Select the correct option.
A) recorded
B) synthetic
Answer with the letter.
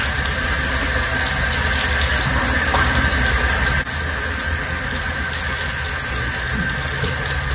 A